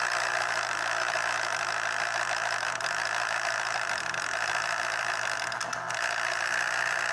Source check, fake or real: real